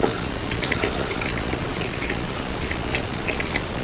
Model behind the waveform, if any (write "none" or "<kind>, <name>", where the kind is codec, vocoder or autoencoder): vocoder, Vocos